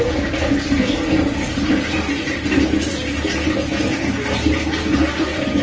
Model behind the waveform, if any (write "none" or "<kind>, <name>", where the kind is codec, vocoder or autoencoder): none